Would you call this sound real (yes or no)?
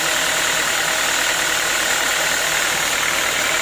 yes